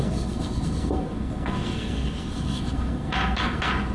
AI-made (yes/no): yes